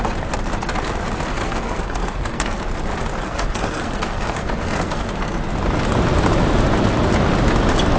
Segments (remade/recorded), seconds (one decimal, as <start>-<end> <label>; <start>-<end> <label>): 0.0-1.3 recorded; 1.3-2.6 remade; 2.6-3.2 recorded; 3.2-5.4 remade; 5.4-8.0 recorded